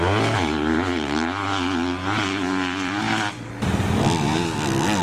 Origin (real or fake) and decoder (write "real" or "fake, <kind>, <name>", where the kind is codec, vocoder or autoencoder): real